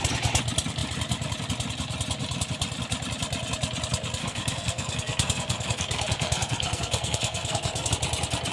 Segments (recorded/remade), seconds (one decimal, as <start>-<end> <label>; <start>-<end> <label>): 0.0-4.2 recorded; 4.2-7.9 remade; 7.9-8.5 recorded